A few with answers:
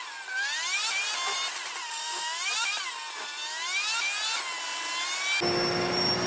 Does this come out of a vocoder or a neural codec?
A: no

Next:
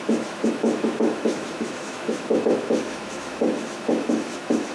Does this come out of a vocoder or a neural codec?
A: yes